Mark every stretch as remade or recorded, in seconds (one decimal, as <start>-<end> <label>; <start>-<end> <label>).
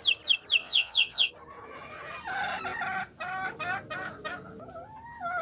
0.0-0.6 recorded; 0.6-1.3 remade; 1.3-5.4 recorded